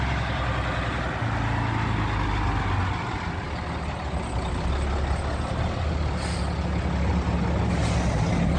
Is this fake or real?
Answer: real